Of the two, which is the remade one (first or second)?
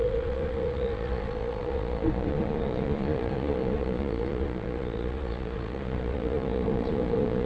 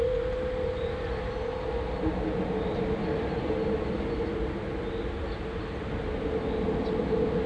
first